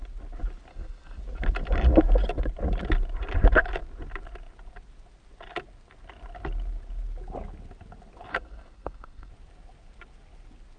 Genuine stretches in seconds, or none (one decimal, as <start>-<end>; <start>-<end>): 0.0-0.7; 1.2-8.3; 9.3-10.8